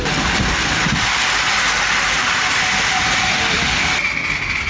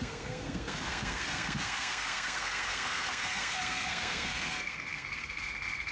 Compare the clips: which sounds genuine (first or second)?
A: first